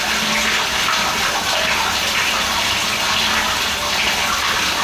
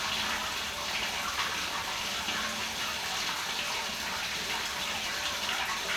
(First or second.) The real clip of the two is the first